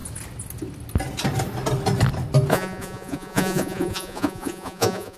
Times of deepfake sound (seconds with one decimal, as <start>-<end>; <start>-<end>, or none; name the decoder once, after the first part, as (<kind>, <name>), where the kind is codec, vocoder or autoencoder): 2.5-5.2 (vocoder, Vocos)